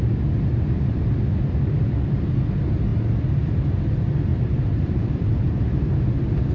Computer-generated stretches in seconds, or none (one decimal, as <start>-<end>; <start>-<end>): 4.3-5.9